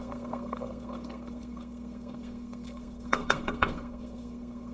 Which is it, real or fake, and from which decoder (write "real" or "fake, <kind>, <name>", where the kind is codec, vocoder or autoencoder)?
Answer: fake, codec, SNAC